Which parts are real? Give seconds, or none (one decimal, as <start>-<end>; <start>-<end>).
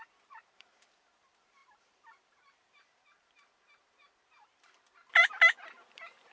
none